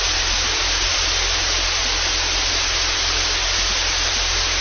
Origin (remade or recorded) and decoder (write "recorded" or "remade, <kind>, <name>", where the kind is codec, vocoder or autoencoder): remade, vocoder, BigVGAN v2